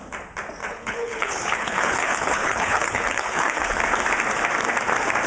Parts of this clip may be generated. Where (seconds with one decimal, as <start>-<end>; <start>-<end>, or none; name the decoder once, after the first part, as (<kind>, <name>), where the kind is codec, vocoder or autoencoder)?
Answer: 0.6-3.8 (codec, HILCodec)